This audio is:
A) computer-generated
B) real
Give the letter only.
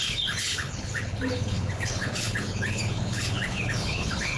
A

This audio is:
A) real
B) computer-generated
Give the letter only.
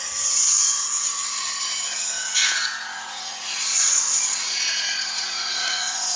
B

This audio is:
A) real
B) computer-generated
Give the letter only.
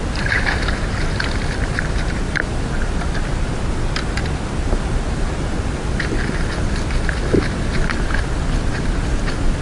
A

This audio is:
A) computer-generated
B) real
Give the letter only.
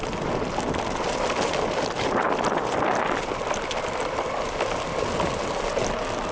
B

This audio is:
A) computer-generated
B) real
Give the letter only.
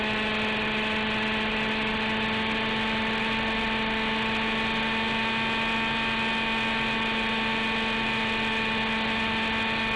B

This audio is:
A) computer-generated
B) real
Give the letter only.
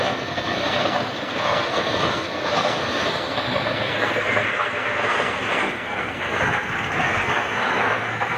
A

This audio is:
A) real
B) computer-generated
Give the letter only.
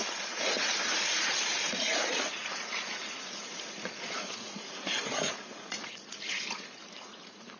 B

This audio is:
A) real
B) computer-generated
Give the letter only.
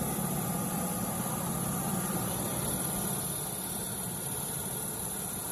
B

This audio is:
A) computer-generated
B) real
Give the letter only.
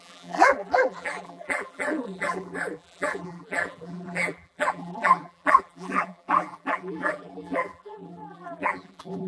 A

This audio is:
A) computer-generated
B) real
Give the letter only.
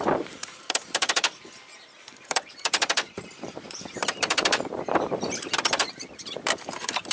A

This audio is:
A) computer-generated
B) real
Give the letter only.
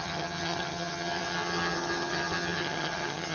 A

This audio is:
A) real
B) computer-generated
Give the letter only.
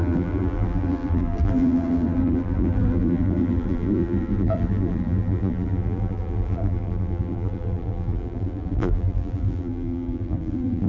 B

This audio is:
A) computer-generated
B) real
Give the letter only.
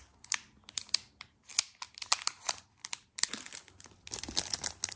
B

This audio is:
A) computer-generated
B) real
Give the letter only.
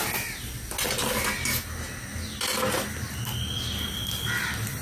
B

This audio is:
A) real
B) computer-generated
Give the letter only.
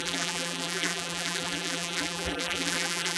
B